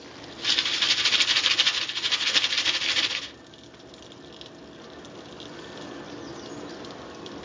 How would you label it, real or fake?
real